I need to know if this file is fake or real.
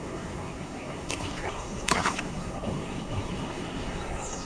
fake